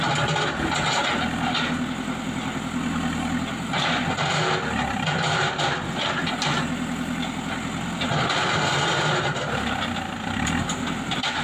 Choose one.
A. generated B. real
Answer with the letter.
B